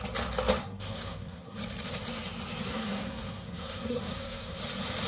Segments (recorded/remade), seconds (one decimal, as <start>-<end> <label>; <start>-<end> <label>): 0.0-0.6 recorded; 0.6-1.6 remade; 1.6-2.7 recorded; 2.7-4.6 remade; 4.6-5.1 recorded